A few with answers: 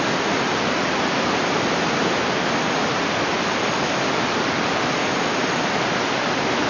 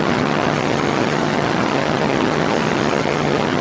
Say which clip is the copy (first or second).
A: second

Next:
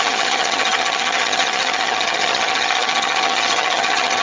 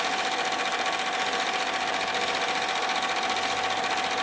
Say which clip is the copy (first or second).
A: first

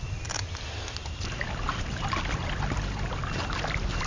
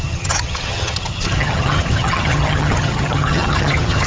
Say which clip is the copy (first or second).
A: second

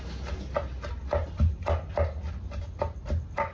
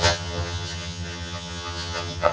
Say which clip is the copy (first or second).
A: second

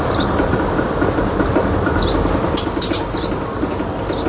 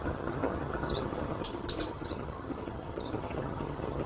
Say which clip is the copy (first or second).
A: second